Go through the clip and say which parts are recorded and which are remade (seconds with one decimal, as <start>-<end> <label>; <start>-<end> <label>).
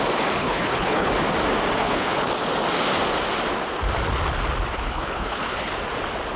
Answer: 0.0-0.4 recorded; 0.4-1.1 remade; 1.1-1.8 recorded; 1.8-2.3 remade; 2.3-4.7 recorded; 4.7-5.7 remade; 5.7-6.4 recorded